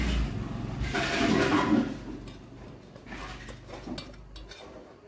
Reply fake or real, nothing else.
real